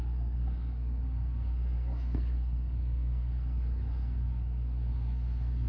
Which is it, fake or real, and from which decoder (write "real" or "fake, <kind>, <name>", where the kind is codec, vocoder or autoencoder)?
fake, codec, SNAC